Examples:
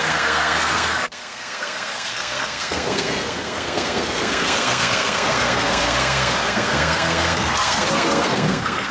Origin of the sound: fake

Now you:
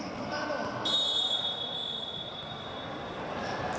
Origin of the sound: real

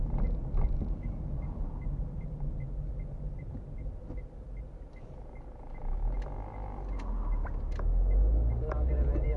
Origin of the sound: real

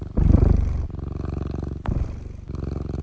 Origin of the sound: real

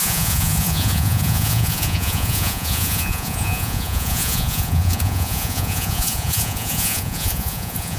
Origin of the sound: fake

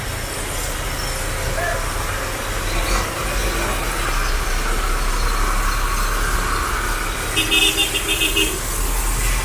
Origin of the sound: real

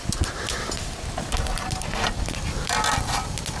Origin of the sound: real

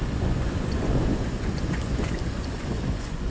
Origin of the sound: fake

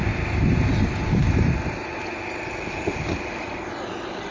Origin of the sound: real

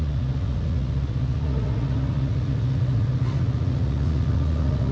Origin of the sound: fake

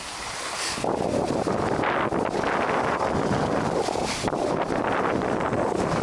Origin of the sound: real